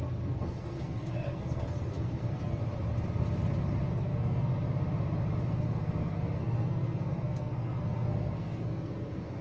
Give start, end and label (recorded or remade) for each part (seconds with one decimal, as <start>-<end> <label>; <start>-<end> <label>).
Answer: 0.0-2.6 remade; 2.6-3.9 recorded; 3.9-4.5 remade; 4.5-5.5 recorded; 5.5-9.4 remade